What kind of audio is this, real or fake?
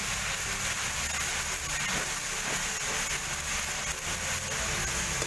real